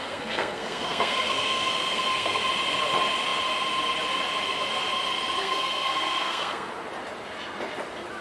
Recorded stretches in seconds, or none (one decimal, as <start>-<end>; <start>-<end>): 2.4-5.4; 6.7-8.2